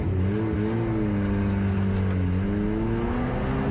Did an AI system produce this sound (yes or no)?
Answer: no